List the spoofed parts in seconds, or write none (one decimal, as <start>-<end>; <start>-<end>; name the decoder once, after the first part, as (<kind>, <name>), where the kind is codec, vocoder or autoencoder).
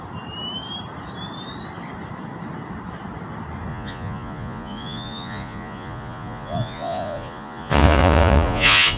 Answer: 3.7-9.0 (vocoder, Vocos)